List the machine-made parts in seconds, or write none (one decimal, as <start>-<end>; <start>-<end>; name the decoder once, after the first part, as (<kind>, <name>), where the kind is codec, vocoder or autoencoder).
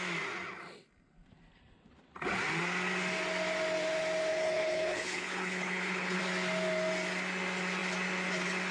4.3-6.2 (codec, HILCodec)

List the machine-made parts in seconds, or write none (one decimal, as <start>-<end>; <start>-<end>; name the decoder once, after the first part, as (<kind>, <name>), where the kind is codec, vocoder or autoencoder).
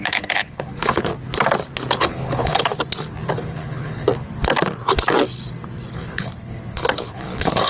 0.0-1.1 (codec, HILCodec); 2.0-2.7; 3.3-4.1; 5.9-7.7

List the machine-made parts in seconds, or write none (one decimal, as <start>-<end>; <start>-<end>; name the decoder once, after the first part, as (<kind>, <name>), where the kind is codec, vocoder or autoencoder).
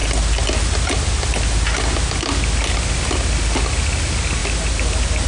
none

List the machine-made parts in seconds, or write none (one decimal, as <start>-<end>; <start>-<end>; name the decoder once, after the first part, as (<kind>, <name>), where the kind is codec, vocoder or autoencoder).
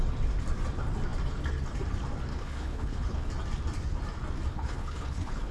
2.3-3.3 (codec, HILCodec); 4.5-5.5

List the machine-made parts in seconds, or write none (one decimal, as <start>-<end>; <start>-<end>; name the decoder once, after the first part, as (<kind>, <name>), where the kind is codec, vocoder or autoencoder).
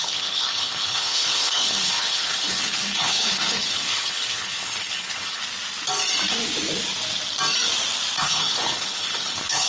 0.0-5.4 (codec, HILCodec); 8.2-9.7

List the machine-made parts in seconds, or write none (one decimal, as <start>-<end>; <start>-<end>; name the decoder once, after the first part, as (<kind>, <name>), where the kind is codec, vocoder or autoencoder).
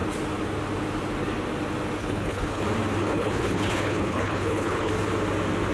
2.0-2.6 (codec, HILCodec); 3.0-4.9